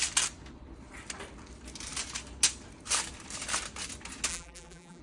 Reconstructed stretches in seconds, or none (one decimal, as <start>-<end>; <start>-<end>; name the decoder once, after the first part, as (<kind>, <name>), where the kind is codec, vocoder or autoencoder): 4.3-5.0 (vocoder, BigVGAN v2)